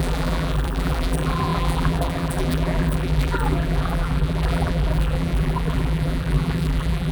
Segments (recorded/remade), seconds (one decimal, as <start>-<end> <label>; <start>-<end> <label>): 0.0-7.1 remade

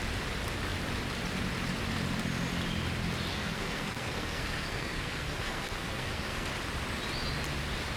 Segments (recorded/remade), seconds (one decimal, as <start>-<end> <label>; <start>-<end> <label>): 0.0-3.3 recorded; 3.3-6.5 remade; 6.5-8.0 recorded

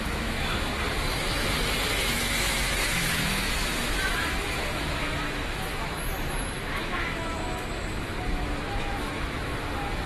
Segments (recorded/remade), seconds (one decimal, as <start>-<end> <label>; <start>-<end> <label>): 0.0-0.7 remade; 0.7-2.0 recorded; 2.0-10.1 remade

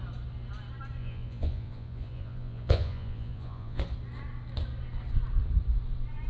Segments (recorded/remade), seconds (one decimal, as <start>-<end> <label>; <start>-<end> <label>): 0.0-1.0 recorded; 1.0-3.8 remade; 3.8-6.3 recorded

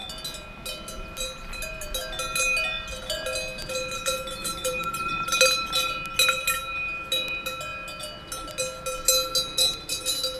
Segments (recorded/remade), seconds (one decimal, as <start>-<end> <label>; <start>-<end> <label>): 0.0-4.4 recorded; 4.4-5.1 remade; 5.1-10.4 recorded

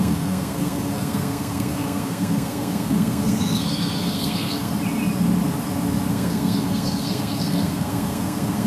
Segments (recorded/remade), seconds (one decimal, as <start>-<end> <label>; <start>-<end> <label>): 0.0-4.7 remade; 4.7-6.1 recorded; 6.1-8.7 remade

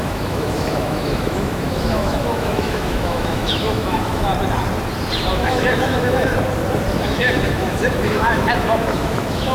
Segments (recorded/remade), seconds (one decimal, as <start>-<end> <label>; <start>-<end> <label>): 0.0-4.3 remade; 4.3-5.3 recorded; 5.3-6.3 remade; 6.3-6.9 recorded; 6.9-9.5 remade